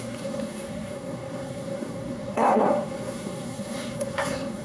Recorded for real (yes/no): no